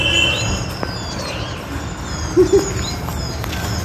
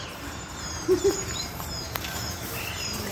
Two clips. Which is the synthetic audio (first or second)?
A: second